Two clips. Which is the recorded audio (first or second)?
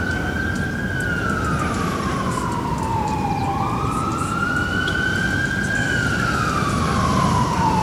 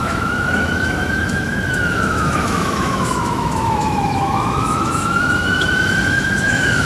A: first